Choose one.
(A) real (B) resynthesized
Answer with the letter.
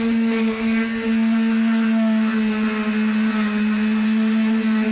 A